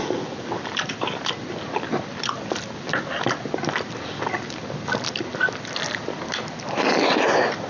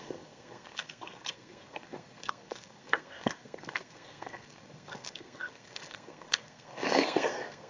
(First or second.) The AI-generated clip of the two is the second